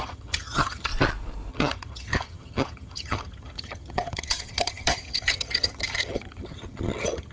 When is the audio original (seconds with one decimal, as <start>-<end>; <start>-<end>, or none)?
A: 0.9-1.5